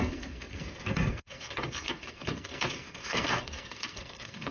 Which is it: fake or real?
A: fake